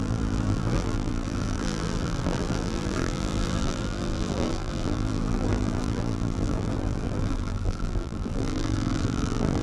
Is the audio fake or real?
fake